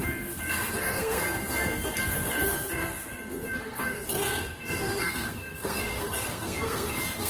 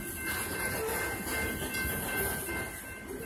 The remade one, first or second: first